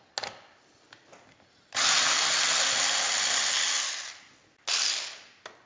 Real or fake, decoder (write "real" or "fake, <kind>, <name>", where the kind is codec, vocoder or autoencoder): real